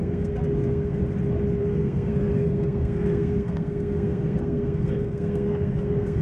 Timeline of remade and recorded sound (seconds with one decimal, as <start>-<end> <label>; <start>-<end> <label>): 0.0-1.0 remade; 1.0-1.6 recorded; 1.6-6.2 remade